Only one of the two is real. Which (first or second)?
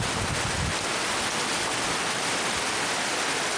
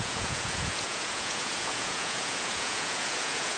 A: first